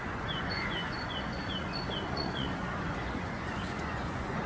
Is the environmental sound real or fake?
fake